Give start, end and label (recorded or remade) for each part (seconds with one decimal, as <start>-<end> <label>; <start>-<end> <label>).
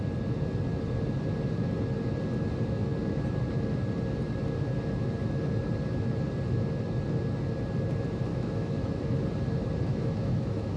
0.0-8.3 recorded; 8.3-9.2 remade; 9.2-9.9 recorded; 9.9-10.8 remade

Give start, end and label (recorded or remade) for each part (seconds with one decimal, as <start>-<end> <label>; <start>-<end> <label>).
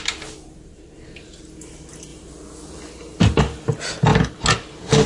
0.0-5.1 recorded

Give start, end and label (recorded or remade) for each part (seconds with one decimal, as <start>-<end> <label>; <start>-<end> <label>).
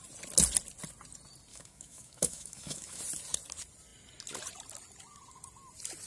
0.0-1.5 recorded; 1.5-3.0 remade; 3.0-6.1 recorded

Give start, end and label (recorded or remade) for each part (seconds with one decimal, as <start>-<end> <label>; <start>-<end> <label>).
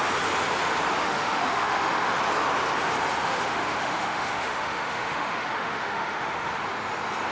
0.0-1.0 recorded; 1.0-2.2 remade; 2.2-3.2 recorded; 3.2-6.5 remade; 6.5-7.3 recorded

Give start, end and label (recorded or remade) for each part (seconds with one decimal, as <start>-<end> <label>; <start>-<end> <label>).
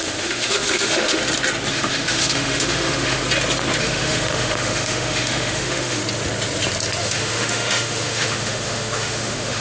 0.0-1.2 remade; 1.2-1.7 recorded; 1.7-3.2 remade; 3.2-3.8 recorded; 3.8-6.0 remade; 6.0-7.0 recorded; 7.0-9.6 remade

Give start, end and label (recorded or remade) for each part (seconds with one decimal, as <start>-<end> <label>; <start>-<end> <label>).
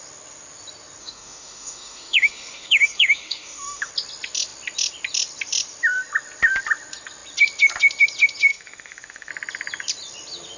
0.0-1.0 recorded; 1.0-3.9 remade; 3.9-8.5 recorded; 8.5-9.3 remade; 9.3-10.6 recorded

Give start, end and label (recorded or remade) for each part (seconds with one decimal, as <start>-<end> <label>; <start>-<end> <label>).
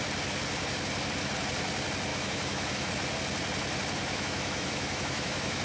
0.0-2.1 recorded; 2.1-2.9 remade; 2.9-4.0 recorded; 4.0-5.6 remade